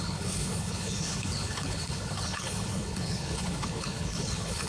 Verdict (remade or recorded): remade